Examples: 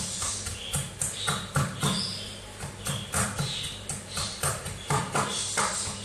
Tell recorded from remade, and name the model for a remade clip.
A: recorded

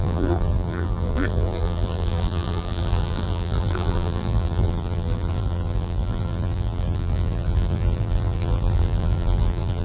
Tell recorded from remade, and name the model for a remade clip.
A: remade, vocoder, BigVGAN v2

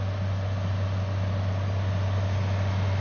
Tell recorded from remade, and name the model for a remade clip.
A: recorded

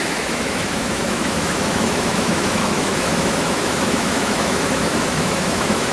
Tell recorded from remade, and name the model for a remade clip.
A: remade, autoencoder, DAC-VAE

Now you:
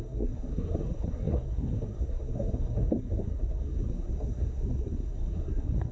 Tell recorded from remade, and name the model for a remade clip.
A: remade, codec, SNAC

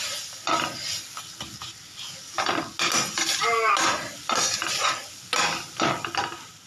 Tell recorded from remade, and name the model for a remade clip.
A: recorded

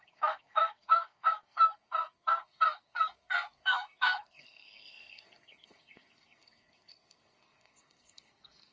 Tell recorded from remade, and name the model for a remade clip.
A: remade, codec, SNAC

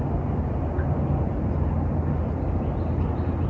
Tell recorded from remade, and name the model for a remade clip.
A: recorded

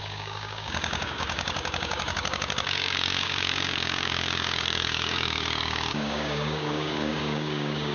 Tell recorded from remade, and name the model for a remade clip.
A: remade, codec, DAC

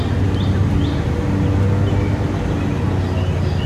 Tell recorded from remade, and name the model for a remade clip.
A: recorded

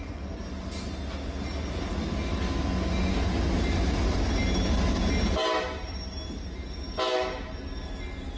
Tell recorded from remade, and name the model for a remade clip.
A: recorded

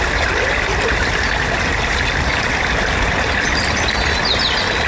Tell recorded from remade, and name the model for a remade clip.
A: recorded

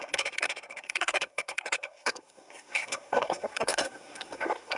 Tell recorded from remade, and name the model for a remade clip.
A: remade, codec, SNAC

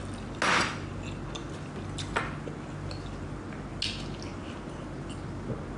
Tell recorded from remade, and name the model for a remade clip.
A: recorded